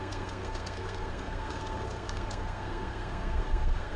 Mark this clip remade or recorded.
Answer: remade